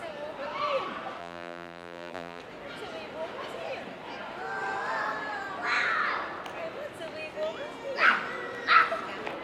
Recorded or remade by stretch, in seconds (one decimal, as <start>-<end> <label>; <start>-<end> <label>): 0.0-1.2 recorded; 1.2-2.4 remade; 2.4-9.4 recorded